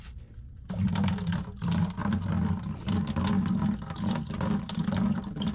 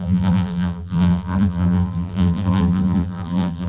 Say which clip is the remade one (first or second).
second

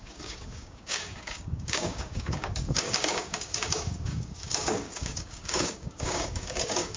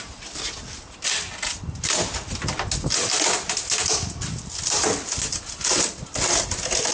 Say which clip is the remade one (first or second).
first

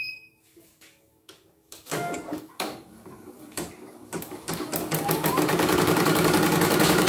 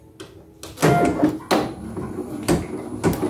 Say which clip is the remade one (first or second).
first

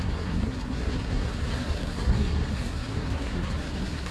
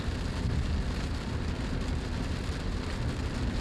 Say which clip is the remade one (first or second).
first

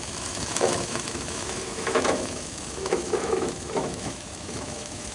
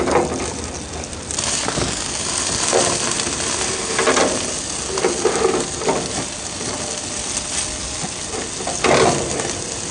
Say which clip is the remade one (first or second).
first